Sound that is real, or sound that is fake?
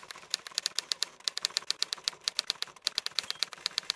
fake